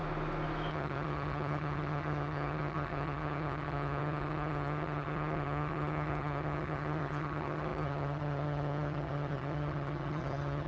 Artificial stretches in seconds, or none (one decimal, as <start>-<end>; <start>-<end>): 0.7-10.7